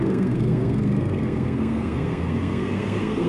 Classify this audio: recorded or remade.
remade